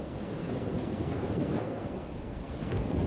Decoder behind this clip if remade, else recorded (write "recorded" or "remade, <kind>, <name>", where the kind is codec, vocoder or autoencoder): remade, codec, SNAC